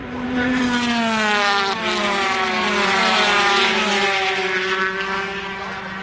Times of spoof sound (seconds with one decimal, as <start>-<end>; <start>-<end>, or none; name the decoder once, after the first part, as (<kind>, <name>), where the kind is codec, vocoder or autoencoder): 0.0-0.6 (vocoder, BigVGAN v2); 2.0-4.8